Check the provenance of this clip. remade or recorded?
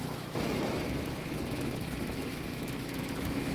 remade